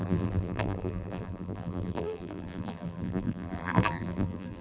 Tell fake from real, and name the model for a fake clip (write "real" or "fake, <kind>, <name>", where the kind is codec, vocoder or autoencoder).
fake, vocoder, BigVGAN v2